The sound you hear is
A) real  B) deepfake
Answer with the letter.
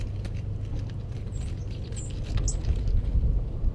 A